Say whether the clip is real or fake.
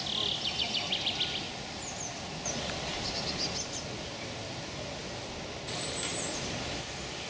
real